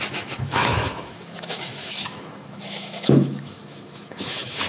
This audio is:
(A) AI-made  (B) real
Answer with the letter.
A